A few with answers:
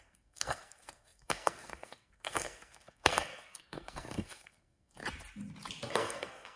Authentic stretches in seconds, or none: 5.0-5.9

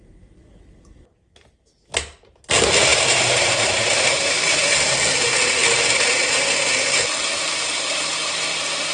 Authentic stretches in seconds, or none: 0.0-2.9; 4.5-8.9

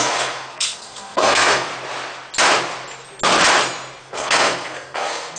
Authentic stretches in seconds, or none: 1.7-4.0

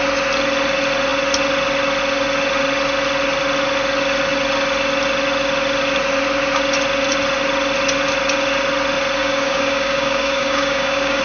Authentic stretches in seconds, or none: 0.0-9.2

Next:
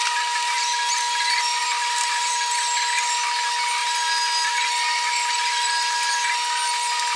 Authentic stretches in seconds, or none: 0.0-1.6; 2.3-7.2

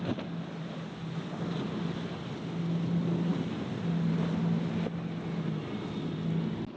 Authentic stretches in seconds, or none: 0.0-6.8